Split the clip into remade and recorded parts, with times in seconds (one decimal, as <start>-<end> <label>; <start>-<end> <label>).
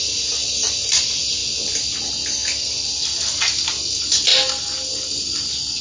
0.0-5.8 recorded